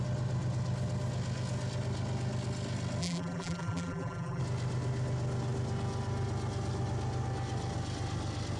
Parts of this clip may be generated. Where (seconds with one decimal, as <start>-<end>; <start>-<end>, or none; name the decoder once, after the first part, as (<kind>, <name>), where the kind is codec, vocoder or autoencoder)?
3.0-4.4 (vocoder, BigVGAN v2)